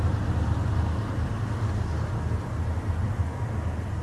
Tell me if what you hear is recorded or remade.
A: recorded